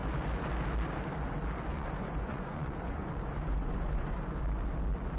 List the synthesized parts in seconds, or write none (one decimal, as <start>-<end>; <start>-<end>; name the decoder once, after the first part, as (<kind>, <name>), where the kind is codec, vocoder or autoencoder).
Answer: 1.7-4.3 (vocoder, Vocos)